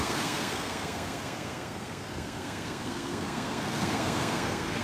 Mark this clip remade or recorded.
remade